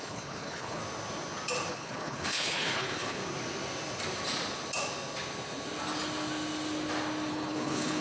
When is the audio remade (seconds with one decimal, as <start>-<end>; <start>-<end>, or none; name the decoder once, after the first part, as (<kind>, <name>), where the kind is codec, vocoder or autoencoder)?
0.0-0.8 (codec, HILCodec); 1.7-3.2; 7.3-8.0